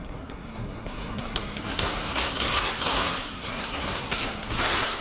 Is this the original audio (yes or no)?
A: no